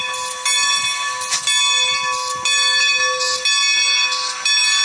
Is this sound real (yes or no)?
yes